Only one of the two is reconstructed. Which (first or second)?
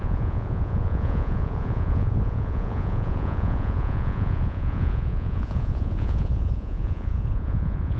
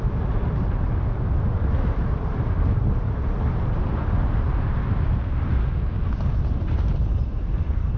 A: first